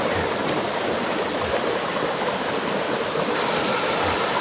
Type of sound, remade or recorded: recorded